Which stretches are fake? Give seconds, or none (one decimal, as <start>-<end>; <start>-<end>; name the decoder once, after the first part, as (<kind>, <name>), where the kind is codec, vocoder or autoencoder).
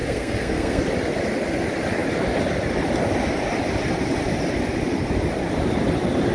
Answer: 0.0-0.8 (codec, SNAC)